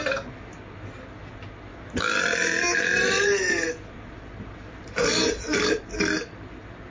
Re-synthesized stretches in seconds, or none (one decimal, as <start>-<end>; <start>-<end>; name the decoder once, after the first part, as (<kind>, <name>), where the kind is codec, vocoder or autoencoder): 1.7-5.7 (vocoder, BigVGAN v2)